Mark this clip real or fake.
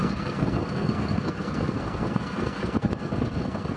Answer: fake